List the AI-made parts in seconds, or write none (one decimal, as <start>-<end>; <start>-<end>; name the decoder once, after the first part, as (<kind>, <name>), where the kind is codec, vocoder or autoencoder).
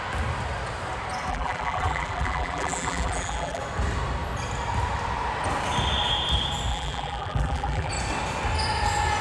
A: 1.3-3.6 (vocoder, BigVGAN v2); 6.7-7.9